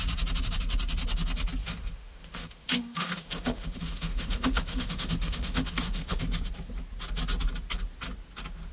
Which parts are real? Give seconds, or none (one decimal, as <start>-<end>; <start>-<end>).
0.0-1.6; 6.2-8.7